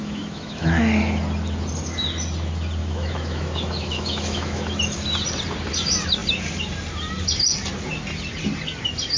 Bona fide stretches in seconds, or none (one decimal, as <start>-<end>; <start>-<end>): 0.8-2.8; 4.8-9.2